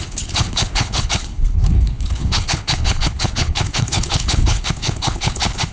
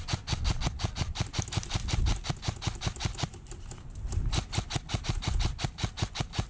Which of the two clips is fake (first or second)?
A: first